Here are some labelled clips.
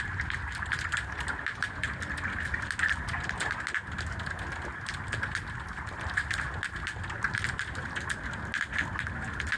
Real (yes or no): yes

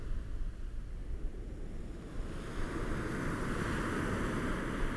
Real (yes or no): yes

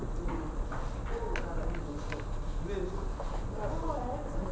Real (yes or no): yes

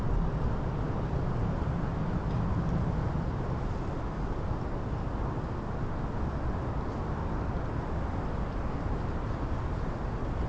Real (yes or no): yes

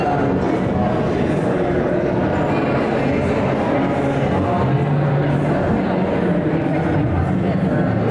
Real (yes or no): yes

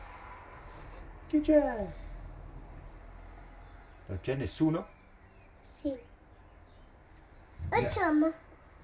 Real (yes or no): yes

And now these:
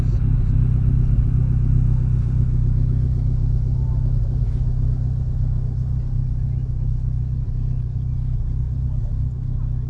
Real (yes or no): yes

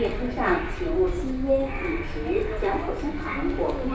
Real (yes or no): yes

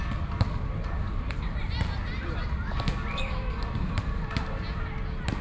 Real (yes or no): yes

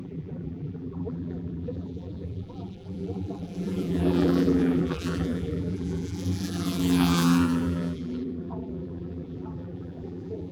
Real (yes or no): no